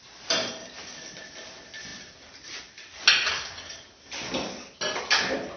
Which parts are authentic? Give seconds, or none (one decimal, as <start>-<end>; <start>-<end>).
0.0-5.6